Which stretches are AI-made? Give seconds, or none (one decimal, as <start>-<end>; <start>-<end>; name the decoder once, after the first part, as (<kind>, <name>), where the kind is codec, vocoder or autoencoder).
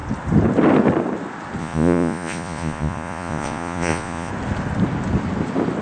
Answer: 1.6-4.3 (vocoder, Vocos)